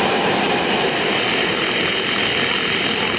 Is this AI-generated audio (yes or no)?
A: no